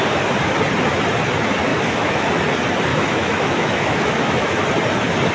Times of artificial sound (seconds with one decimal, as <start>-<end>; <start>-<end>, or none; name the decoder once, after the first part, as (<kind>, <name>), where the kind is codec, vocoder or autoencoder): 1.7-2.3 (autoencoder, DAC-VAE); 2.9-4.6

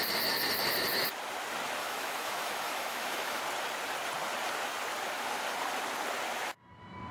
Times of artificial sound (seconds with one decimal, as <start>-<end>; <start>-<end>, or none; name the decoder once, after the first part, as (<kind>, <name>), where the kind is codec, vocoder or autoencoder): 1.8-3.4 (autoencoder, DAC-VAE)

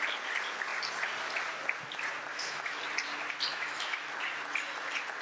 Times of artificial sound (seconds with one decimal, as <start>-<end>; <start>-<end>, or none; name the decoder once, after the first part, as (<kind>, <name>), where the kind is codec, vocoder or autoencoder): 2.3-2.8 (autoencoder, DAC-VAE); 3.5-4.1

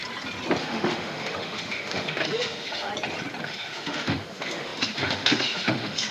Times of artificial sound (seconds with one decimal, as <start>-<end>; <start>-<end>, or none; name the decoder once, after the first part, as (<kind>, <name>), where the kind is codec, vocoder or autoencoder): 0.6-2.9 (autoencoder, DAC-VAE); 3.4-6.1

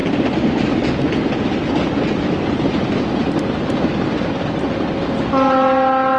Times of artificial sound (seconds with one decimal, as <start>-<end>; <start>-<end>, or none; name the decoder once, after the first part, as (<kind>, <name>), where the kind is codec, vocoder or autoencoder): none

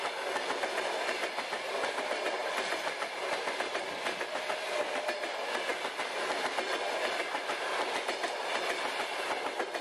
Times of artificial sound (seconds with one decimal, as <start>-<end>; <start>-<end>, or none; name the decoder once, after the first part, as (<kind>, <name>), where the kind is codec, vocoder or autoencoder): none